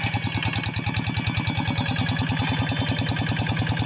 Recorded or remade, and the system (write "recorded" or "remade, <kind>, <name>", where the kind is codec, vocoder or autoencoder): recorded